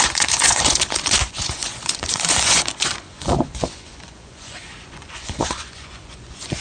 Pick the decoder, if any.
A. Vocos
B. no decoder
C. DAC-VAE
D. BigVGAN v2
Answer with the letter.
A